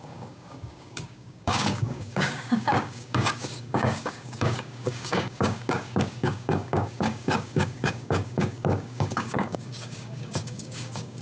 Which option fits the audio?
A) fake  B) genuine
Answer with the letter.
A